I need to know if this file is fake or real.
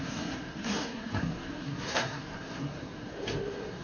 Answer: fake